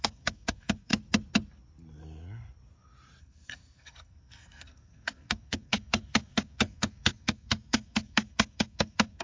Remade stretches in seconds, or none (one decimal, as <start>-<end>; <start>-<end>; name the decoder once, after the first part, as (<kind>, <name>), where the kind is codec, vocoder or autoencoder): 0.0-0.9 (codec, SNAC); 3.2-9.2